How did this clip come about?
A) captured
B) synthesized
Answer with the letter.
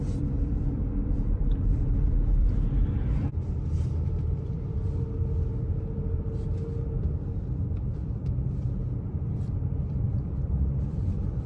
B